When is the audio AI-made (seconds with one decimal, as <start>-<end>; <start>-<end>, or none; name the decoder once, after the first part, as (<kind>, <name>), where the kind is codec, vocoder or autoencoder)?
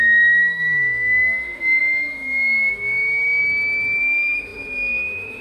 0.0-3.4 (autoencoder, DAC-VAE); 4.0-5.4